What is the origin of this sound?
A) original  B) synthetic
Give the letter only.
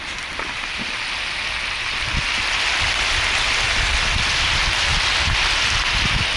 A